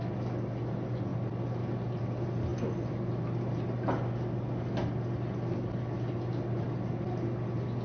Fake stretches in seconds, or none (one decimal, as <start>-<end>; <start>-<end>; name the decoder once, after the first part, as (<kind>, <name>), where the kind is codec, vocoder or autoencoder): none